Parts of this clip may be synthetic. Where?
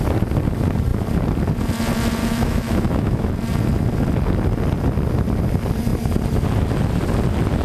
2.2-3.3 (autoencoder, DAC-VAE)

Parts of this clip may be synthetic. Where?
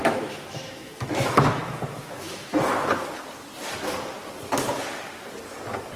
0.0-2.5 (autoencoder, DAC-VAE)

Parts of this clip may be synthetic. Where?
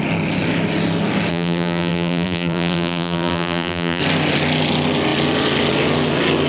1.3-4.0 (vocoder, BigVGAN v2)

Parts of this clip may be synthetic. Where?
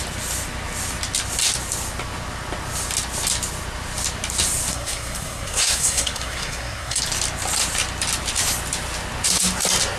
4.7-7.0 (codec, SNAC)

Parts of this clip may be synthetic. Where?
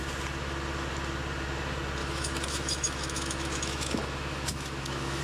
2.0-5.2 (autoencoder, DAC-VAE)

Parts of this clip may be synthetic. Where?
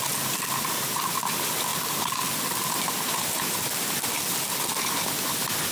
none